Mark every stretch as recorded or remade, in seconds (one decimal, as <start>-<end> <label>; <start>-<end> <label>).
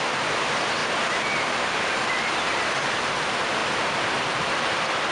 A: 0.0-0.8 recorded; 0.8-2.7 remade; 2.7-3.6 recorded; 3.6-5.1 remade